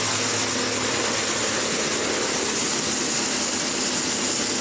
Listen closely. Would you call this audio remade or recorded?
recorded